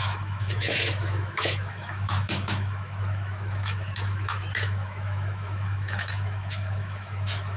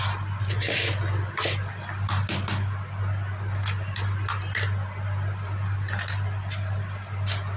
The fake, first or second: first